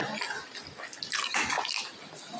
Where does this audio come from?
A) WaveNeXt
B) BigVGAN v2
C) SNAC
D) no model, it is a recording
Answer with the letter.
D